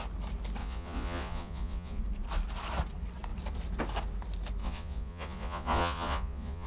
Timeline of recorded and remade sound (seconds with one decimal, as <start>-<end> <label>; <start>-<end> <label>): 0.0-0.6 recorded; 0.6-2.0 remade; 2.0-4.6 recorded; 4.6-6.7 remade